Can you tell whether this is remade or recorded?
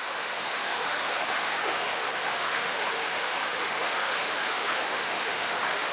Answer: remade